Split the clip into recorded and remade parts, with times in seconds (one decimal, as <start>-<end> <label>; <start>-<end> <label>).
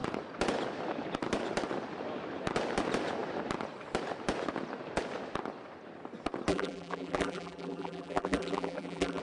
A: 0.0-6.5 recorded; 6.5-9.2 remade